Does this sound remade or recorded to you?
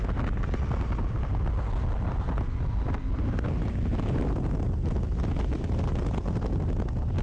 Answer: recorded